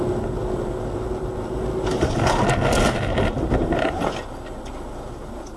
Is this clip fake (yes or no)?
no